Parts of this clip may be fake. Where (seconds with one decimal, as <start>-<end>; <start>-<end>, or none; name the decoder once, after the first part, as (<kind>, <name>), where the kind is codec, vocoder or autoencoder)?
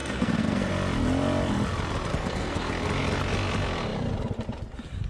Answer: 0.0-0.7 (codec, SNAC); 2.1-2.7